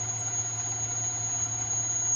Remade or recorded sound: recorded